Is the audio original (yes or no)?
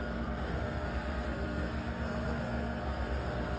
no